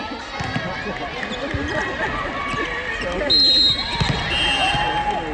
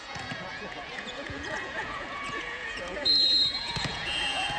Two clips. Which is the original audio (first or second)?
first